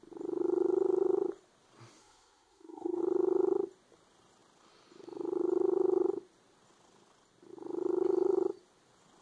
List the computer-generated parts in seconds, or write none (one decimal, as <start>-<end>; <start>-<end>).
2.0-3.0

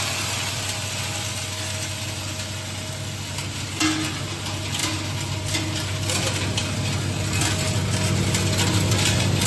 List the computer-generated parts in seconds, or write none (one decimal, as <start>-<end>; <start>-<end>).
none

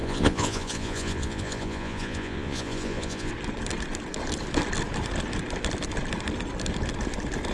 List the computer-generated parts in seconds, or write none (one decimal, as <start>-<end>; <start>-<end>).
0.0-3.3

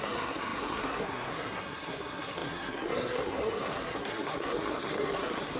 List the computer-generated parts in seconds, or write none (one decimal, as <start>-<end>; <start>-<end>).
0.0-5.6